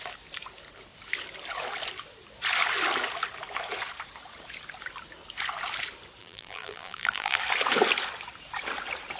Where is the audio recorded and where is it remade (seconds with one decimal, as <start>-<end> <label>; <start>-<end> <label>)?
0.0-6.2 recorded; 6.2-7.4 remade; 7.4-9.2 recorded